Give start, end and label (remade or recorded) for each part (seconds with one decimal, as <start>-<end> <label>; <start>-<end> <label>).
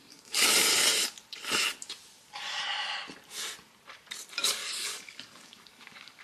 0.0-0.7 remade; 0.7-4.4 recorded; 4.4-6.2 remade